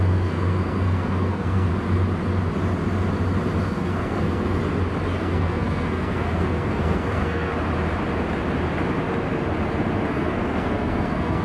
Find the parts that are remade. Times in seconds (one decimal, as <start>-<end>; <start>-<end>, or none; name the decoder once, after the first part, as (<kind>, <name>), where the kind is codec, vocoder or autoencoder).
0.0-1.7 (codec, SNAC); 3.6-4.6; 5.2-7.5; 10.1-11.4